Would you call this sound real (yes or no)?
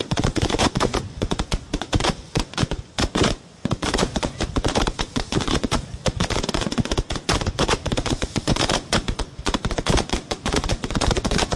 no